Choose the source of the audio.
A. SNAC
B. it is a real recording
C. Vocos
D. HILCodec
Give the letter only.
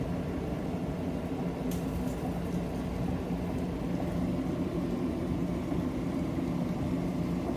B